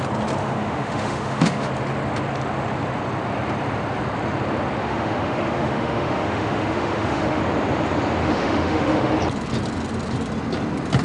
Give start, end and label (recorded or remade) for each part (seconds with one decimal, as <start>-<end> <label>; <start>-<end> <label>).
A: 0.0-0.4 recorded; 0.4-1.7 remade; 1.7-4.8 recorded; 4.8-7.4 remade; 7.4-8.2 recorded; 8.2-9.1 remade; 9.1-11.0 recorded